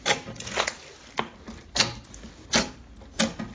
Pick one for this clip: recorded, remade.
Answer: recorded